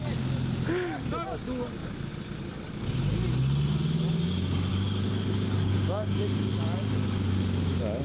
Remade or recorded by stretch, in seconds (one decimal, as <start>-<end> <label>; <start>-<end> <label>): 0.0-4.7 recorded; 4.7-6.5 remade; 6.5-8.0 recorded

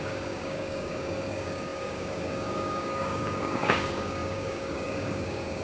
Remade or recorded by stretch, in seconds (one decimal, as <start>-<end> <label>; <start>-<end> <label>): 0.0-5.6 remade

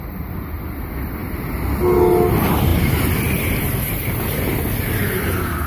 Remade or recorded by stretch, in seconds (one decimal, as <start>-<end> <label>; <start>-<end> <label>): 0.0-5.7 recorded

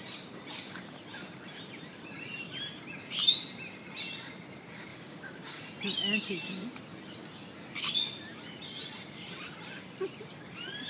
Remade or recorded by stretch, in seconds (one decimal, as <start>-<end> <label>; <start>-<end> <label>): 0.0-4.9 recorded; 4.9-5.6 remade; 5.6-10.9 recorded

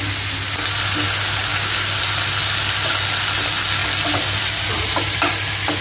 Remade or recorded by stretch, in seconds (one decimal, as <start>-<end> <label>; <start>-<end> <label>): 0.0-1.5 recorded; 1.5-2.0 remade; 2.0-5.8 recorded

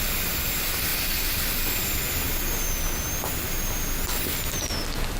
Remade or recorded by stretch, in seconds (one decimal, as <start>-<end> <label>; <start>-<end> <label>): 0.0-5.2 recorded

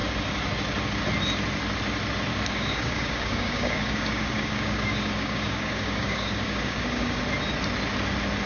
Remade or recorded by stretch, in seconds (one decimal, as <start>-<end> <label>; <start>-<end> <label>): 0.0-2.3 recorded; 2.3-7.2 remade; 7.2-8.5 recorded